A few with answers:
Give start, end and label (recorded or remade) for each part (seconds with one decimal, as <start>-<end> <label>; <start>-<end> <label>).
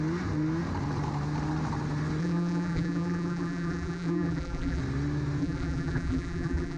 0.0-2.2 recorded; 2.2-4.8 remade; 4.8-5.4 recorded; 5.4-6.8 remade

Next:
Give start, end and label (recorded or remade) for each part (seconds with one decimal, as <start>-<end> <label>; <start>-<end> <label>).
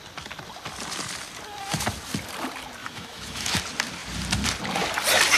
0.0-2.8 recorded; 2.8-3.6 remade; 3.6-5.4 recorded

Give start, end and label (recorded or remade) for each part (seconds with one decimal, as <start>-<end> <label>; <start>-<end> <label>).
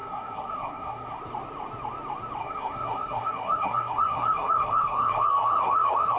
0.0-1.2 remade; 1.2-2.4 recorded; 2.4-6.2 remade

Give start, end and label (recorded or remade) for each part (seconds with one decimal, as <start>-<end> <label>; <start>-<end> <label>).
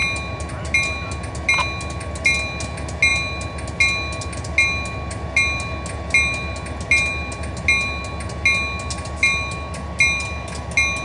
0.0-11.0 recorded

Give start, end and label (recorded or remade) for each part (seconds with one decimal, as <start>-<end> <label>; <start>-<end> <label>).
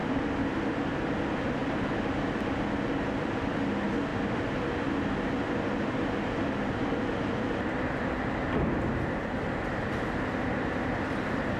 0.0-0.7 remade; 0.7-11.6 recorded